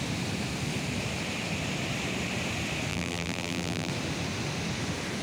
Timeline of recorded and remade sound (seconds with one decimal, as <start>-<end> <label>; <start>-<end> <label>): 0.0-2.9 recorded; 2.9-3.9 remade; 3.9-5.2 recorded